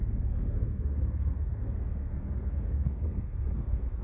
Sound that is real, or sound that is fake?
fake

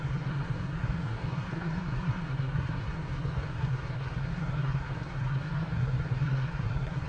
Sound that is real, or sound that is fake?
fake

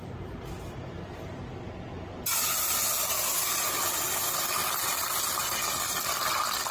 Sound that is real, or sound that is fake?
real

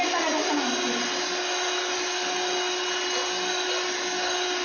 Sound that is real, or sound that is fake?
real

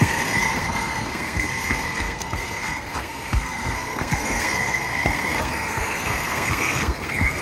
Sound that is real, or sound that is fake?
fake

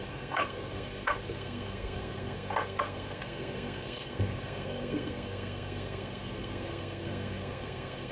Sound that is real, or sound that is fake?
fake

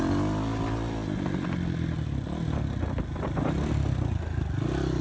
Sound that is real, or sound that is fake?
real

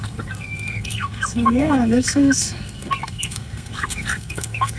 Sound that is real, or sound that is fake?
fake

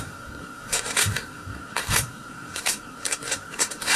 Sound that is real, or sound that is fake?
fake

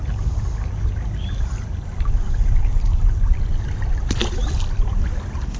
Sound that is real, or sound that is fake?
real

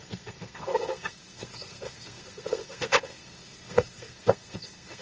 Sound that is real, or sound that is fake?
fake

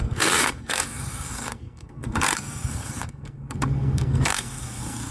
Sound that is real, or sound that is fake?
fake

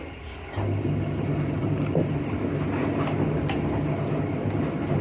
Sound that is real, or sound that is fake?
real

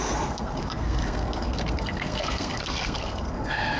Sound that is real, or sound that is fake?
fake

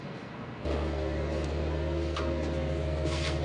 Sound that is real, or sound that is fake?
fake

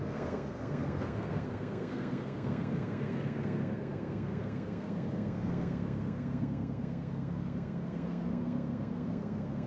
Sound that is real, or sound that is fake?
fake